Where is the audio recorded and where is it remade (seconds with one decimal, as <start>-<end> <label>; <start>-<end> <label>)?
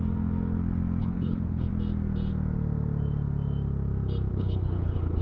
0.0-1.0 recorded; 1.0-1.7 remade; 1.7-4.3 recorded; 4.3-5.2 remade